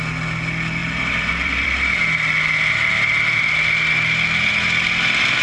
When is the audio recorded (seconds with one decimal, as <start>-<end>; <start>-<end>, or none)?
0.0-0.8; 1.9-5.4